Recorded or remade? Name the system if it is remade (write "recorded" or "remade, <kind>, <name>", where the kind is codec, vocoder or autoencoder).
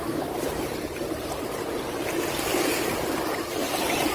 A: remade, vocoder, BigVGAN v2